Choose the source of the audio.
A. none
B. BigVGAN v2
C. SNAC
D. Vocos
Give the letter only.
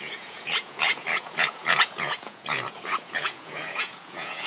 D